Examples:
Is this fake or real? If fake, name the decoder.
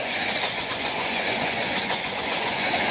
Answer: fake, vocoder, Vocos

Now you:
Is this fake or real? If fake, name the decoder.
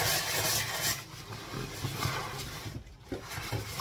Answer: real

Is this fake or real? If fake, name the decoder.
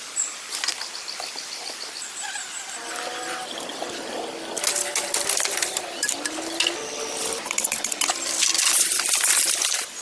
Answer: real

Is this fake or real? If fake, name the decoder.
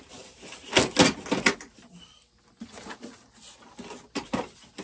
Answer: real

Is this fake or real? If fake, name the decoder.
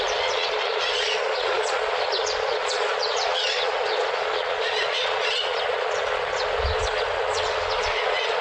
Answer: fake, vocoder, Vocos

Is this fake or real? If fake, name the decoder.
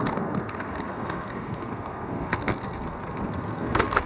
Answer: fake, codec, SNAC